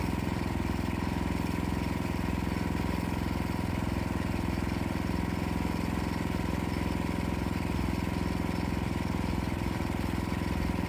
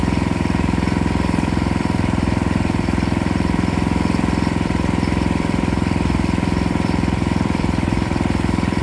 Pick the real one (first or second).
first